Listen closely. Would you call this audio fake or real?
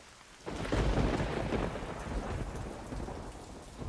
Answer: real